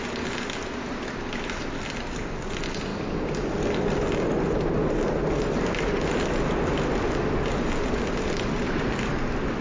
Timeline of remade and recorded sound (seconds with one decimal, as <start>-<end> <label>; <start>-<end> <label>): 0.0-9.6 recorded